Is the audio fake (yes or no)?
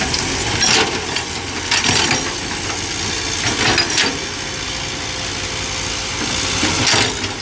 no